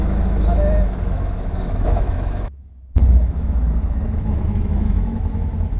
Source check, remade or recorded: remade